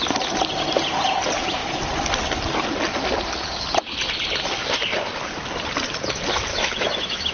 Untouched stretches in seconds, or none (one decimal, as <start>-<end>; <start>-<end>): 0.0-6.5